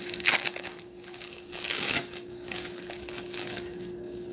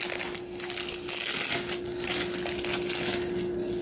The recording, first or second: second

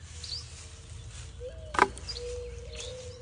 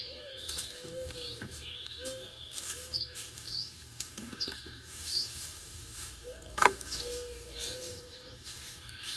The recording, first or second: first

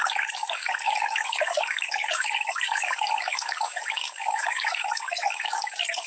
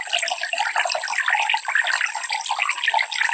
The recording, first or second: second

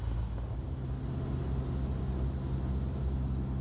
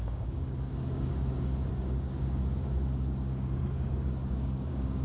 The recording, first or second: first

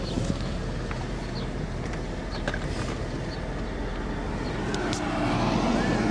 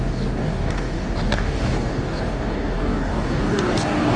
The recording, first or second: first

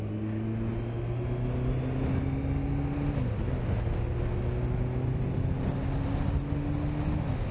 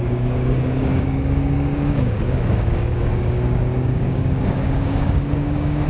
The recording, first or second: first